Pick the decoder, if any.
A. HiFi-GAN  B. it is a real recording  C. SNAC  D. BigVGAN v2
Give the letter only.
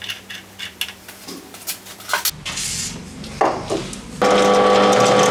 B